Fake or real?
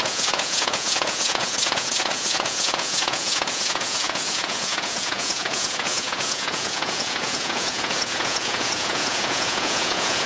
fake